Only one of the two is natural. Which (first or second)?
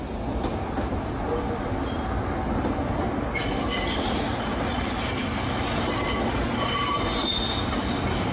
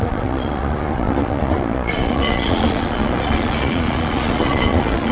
first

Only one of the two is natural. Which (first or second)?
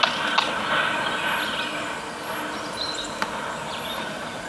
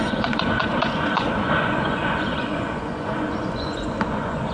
first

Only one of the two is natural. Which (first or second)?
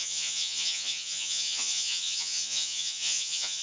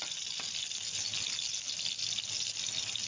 second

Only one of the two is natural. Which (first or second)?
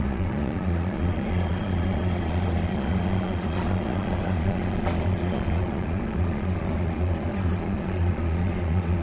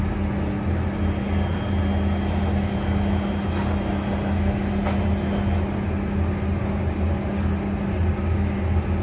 second